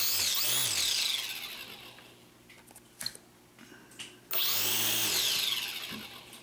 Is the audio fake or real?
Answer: real